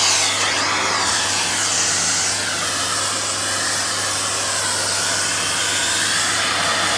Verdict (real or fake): real